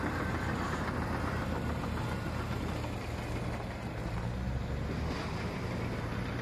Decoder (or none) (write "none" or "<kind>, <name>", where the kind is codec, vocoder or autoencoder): none